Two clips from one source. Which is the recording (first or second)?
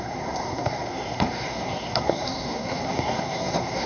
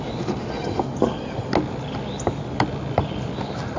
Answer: second